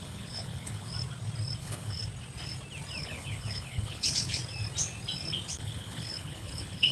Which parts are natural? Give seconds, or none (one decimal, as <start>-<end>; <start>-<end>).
0.9-1.6; 2.0-3.0; 4.4-5.5